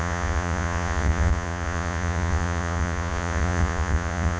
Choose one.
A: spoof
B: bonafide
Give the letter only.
A